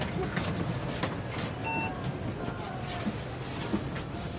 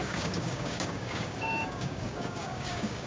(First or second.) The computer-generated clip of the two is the second